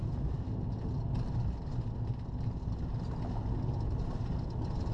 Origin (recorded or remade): recorded